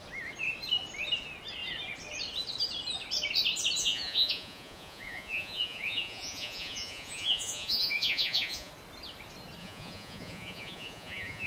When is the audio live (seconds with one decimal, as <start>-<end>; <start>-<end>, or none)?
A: 0.0-3.8; 8.7-9.6